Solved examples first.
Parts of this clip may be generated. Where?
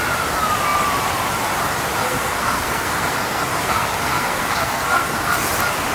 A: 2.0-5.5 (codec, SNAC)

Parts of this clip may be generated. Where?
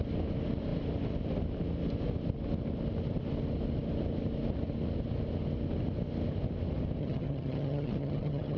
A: 7.0-8.6 (vocoder, HiFi-GAN)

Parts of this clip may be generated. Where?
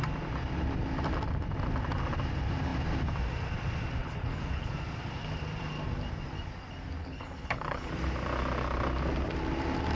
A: 4.0-4.7 (codec, HILCodec); 7.0-7.9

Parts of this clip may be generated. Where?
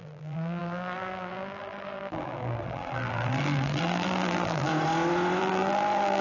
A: 0.0-4.7 (vocoder, BigVGAN v2); 5.4-6.2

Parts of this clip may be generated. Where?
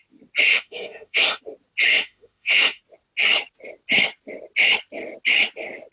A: 0.5-1.4 (autoencoder, DAC-VAE); 1.9-2.8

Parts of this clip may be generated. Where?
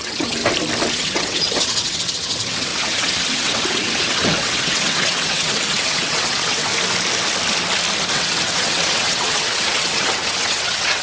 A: 0.0-0.4 (vocoder, WaveNeXt); 0.9-6.7; 8.1-11.0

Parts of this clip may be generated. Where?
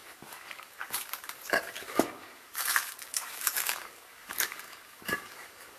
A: 0.0-5.8 (codec, DAC)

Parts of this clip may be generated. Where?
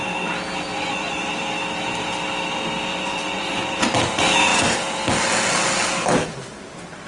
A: 0.7-1.3 (vocoder, Vocos); 2.9-3.8